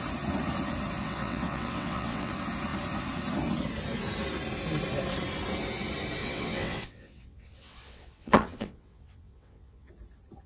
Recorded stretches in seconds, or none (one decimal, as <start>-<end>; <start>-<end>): 0.0-1.0; 2.3-6.2; 9.9-10.5